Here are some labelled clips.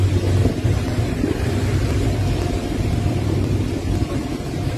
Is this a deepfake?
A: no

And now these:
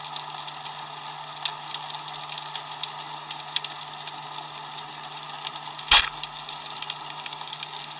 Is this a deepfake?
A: no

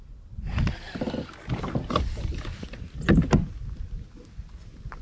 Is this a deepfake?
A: no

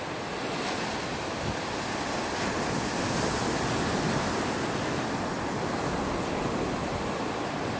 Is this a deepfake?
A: no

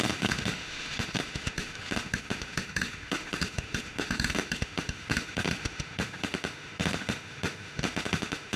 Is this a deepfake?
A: yes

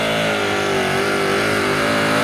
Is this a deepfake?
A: no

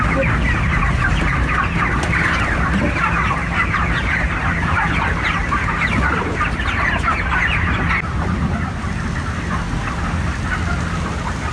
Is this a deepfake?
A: no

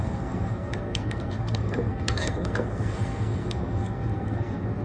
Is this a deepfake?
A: yes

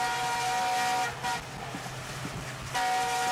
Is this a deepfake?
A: no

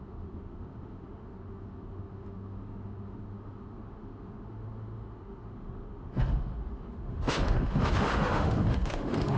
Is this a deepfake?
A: yes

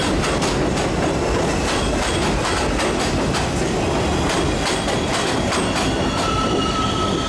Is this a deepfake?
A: no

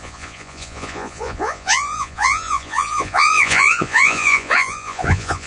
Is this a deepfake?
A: yes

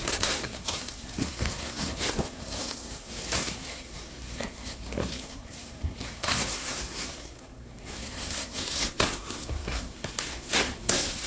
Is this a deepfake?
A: yes